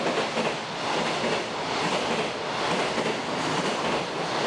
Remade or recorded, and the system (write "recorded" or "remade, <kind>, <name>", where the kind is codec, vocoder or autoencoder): recorded